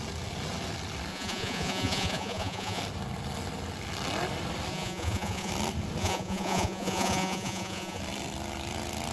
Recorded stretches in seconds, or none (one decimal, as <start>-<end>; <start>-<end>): 0.0-1.1; 2.8-4.7; 5.5-6.0; 8.0-9.1